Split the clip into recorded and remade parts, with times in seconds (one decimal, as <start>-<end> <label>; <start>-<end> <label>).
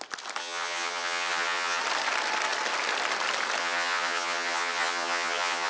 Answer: 0.0-0.4 recorded; 0.4-1.8 remade; 1.8-3.6 recorded; 3.6-5.7 remade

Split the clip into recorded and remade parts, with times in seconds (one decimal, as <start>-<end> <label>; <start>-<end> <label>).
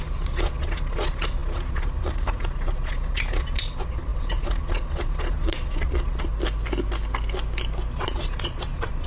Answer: 0.0-6.3 remade; 6.3-7.9 recorded; 7.9-9.1 remade